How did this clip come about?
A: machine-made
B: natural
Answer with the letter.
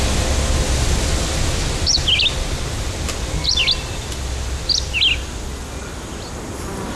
B